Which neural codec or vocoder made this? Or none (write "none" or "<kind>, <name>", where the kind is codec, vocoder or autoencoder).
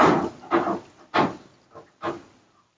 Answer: none